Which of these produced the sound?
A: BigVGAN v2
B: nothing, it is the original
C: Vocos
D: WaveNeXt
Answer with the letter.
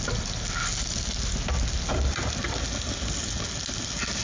B